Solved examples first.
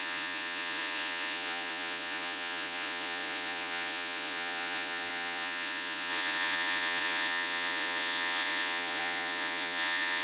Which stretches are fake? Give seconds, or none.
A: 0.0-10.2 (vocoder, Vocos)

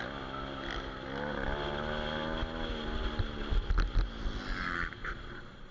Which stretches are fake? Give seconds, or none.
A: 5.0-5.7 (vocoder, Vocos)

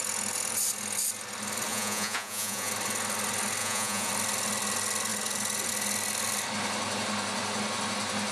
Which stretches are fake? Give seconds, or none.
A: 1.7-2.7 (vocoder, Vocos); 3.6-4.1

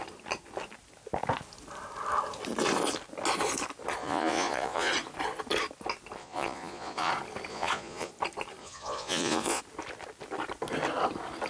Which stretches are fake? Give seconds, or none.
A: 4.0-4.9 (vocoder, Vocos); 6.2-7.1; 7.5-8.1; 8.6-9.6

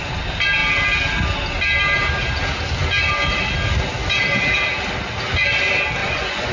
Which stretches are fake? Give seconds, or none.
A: 6.0-6.5 (vocoder, Vocos)